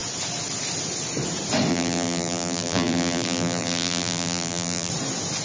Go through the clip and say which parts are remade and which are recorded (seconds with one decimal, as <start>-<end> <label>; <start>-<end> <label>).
0.0-1.7 recorded; 1.7-4.9 remade; 4.9-5.4 recorded